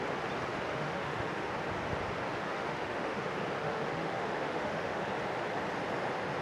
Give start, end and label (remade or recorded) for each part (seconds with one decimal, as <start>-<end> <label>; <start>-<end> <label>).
0.0-0.7 recorded; 0.7-1.5 remade; 1.5-2.5 recorded; 2.5-3.2 remade; 3.2-3.6 recorded; 3.6-5.1 remade; 5.1-6.4 recorded